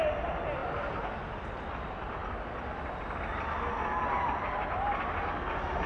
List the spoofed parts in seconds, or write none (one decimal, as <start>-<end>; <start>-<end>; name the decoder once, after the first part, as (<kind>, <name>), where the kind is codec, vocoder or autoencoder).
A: none